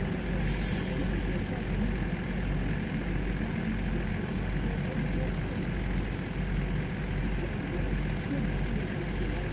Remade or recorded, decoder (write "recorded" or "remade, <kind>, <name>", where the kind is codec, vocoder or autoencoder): recorded